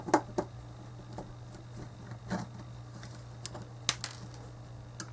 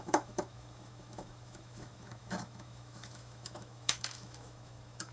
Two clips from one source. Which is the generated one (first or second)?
second